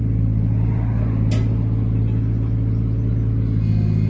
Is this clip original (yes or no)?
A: yes